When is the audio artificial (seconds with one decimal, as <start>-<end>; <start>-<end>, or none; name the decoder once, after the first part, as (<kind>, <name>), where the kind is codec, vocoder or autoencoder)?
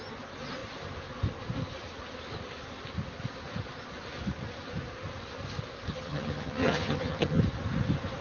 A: 5.9-7.4 (vocoder, HiFi-GAN)